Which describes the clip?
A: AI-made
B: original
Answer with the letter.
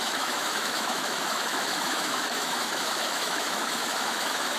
A